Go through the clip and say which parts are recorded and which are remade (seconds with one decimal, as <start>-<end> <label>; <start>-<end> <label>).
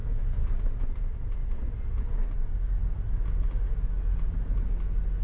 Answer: 0.0-5.2 recorded